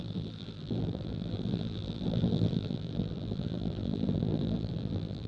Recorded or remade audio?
remade